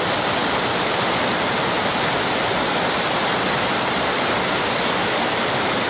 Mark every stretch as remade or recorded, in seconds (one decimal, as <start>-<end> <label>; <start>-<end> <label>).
0.0-5.9 recorded